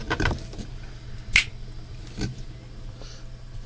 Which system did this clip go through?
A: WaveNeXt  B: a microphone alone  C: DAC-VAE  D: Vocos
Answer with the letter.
B